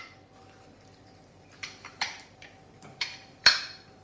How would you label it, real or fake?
fake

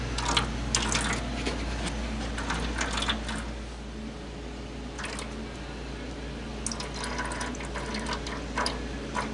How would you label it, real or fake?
real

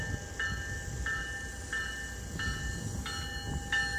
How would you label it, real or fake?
real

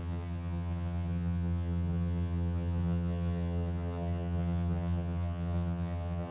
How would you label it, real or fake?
fake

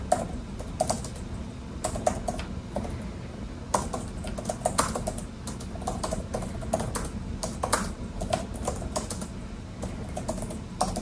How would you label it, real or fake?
real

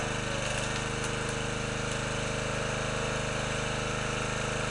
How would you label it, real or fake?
real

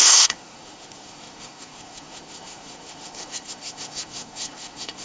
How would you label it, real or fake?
fake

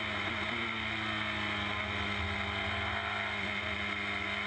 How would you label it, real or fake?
real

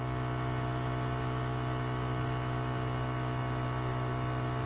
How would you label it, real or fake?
real